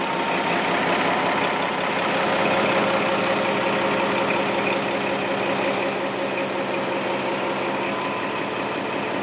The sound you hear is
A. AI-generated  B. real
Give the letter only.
B